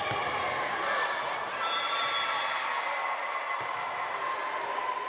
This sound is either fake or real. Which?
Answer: real